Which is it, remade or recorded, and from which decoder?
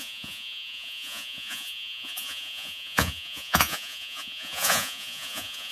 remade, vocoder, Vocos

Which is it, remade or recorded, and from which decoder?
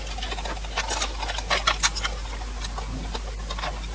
recorded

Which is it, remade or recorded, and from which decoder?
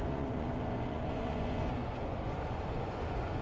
remade, vocoder, Vocos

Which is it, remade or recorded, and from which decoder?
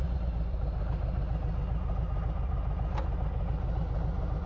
recorded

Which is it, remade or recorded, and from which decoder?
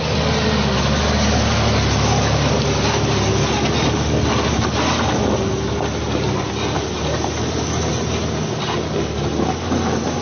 recorded